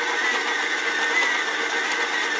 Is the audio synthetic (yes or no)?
no